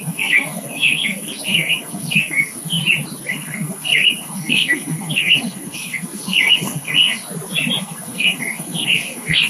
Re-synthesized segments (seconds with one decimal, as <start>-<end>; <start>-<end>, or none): 0.0-2.8; 3.3-7.2; 7.8-9.5